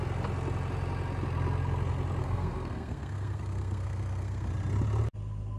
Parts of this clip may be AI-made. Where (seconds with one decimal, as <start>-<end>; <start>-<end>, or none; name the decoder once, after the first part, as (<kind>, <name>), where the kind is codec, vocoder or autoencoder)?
2.2-4.5 (codec, SNAC)